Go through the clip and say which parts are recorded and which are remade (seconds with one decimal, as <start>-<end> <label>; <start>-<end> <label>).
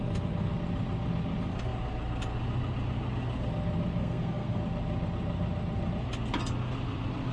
0.0-4.0 recorded; 4.0-4.6 remade; 4.6-7.3 recorded